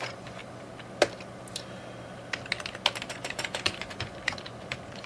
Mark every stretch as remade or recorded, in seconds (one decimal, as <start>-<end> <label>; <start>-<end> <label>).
0.0-0.4 remade; 0.4-3.1 recorded; 3.1-5.1 remade